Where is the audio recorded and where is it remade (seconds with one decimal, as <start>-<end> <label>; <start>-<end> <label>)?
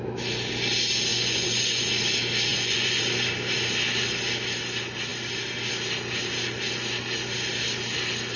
0.0-1.1 recorded; 1.1-1.9 remade; 1.9-2.5 recorded; 2.5-3.0 remade; 3.0-8.4 recorded